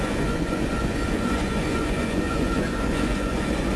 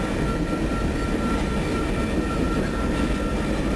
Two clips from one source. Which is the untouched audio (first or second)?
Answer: second